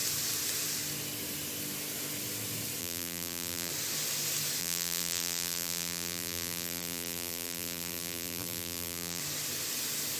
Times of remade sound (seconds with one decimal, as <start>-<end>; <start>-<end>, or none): 2.8-3.7; 4.6-9.2